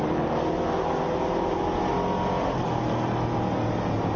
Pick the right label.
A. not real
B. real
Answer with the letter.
B